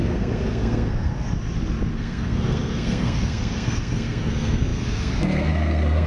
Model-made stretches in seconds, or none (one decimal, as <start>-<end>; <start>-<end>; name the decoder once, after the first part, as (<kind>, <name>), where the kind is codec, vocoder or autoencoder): 0.0-1.1 (codec, SNAC); 1.9-6.1